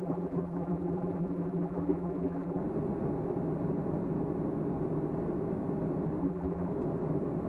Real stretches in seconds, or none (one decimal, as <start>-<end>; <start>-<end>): 2.6-6.2; 6.7-7.5